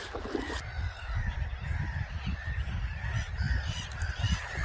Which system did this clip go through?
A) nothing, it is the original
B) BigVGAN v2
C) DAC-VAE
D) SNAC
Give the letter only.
A